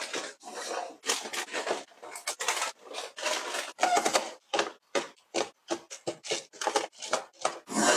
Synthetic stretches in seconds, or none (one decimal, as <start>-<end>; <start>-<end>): none